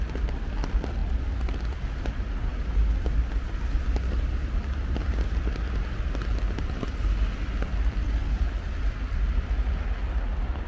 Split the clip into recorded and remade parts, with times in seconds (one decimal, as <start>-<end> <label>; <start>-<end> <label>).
0.0-10.7 recorded

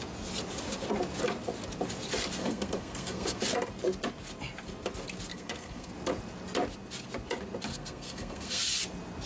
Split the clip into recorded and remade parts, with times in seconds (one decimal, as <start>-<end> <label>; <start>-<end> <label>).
0.0-2.4 recorded; 2.4-3.4 remade; 3.4-5.3 recorded; 5.3-5.9 remade; 5.9-7.7 recorded; 7.7-8.6 remade; 8.6-9.3 recorded